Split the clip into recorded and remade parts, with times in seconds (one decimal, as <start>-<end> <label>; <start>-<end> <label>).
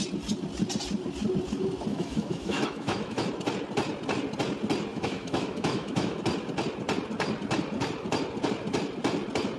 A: 0.0-1.9 recorded; 1.9-3.3 remade; 3.3-4.9 recorded; 4.9-6.2 remade; 6.2-9.6 recorded